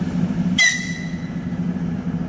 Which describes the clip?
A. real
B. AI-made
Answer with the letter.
A